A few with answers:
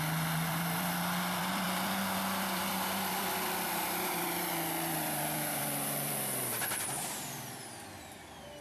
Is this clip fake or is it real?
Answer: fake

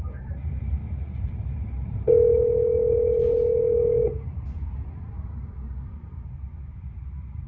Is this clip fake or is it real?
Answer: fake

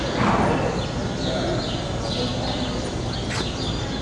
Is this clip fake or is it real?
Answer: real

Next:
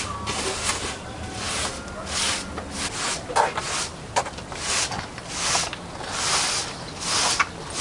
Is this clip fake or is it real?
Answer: real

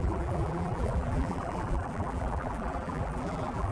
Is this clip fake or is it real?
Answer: fake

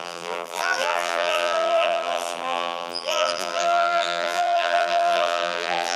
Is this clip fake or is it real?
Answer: fake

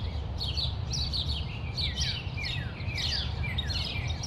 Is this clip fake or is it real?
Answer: fake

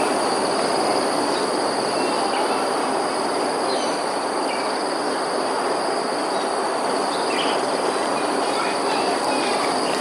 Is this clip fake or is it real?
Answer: real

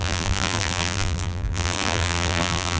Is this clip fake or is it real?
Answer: fake